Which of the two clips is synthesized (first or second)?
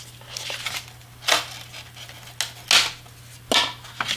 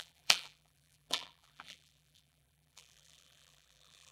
second